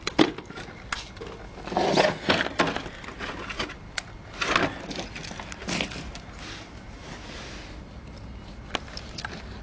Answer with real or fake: real